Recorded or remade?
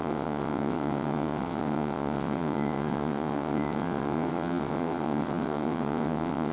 remade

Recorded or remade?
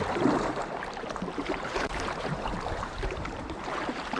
remade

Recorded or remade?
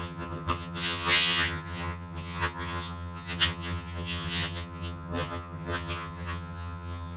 remade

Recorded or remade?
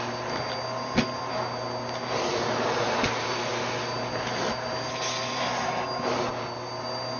recorded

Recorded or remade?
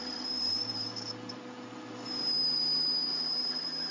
recorded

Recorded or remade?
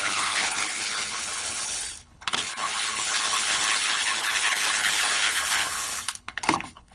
remade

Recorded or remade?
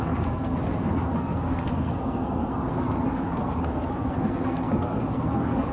remade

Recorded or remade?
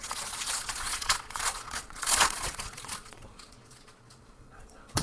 remade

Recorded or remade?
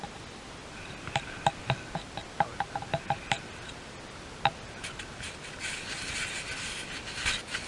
recorded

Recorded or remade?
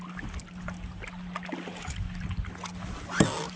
recorded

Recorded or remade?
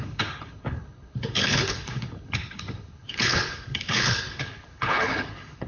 remade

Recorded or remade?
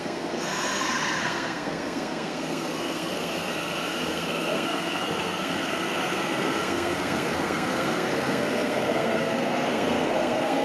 remade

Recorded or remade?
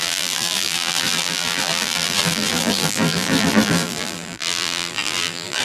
remade